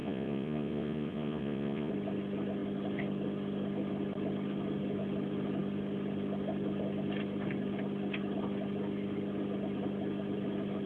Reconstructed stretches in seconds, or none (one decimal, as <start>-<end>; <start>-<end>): 0.0-1.9